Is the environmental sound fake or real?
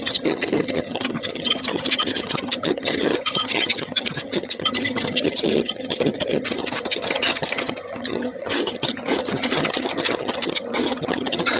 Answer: fake